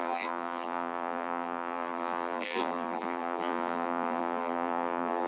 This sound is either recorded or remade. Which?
remade